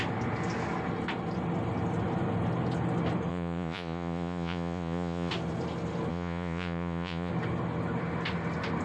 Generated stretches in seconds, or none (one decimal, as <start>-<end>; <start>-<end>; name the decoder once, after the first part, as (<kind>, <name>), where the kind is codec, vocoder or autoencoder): 3.3-5.3 (vocoder, Vocos); 6.1-7.3